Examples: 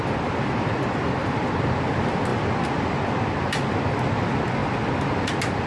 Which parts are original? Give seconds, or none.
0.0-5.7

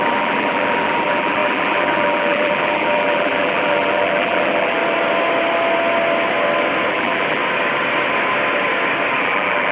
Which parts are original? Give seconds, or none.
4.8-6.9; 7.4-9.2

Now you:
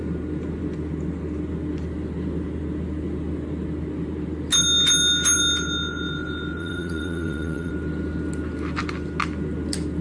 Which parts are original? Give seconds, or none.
0.0-6.6; 7.7-10.0

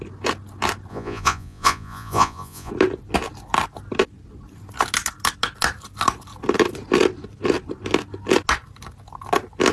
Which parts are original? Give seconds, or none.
0.0-0.9; 2.7-9.7

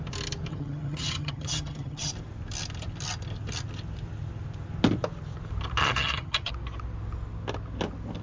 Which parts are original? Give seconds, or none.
0.0-0.5; 2.1-5.8; 6.5-8.2